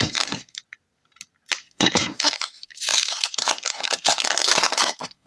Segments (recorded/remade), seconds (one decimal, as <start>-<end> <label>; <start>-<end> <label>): 0.0-0.6 remade; 0.6-1.6 recorded; 1.6-5.3 remade